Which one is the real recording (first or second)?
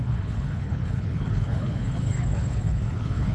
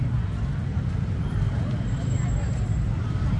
second